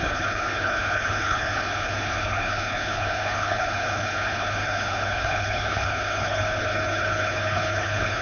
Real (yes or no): no